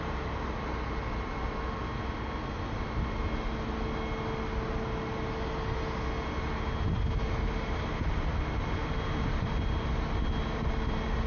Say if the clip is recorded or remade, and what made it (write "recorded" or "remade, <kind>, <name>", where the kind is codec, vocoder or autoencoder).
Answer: recorded